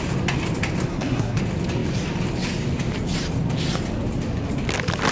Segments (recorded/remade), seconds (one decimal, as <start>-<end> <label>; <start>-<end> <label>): 0.0-0.9 recorded; 0.9-1.4 remade; 1.4-5.1 recorded